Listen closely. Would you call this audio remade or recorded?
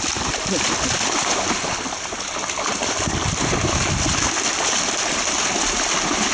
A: recorded